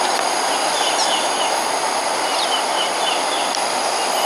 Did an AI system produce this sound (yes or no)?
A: no